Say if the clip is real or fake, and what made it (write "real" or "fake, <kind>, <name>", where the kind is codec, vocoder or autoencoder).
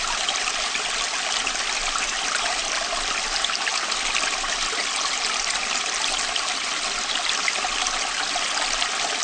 real